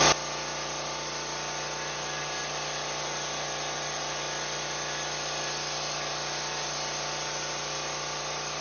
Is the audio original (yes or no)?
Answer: yes